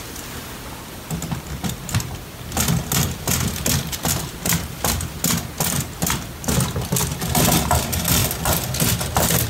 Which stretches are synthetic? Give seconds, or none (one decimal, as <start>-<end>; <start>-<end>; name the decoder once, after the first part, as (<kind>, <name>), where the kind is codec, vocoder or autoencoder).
none